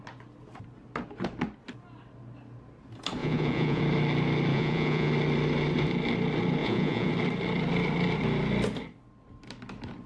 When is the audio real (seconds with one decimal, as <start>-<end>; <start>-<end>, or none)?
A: 0.0-3.2; 3.8-4.5; 5.1-6.6; 7.1-10.1